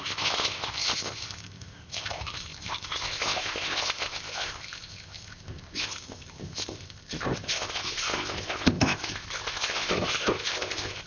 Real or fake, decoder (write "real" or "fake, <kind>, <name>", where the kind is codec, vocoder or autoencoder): fake, codec, ZipCodec